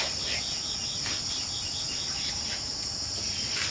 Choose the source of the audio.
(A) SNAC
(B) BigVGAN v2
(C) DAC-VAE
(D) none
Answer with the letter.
D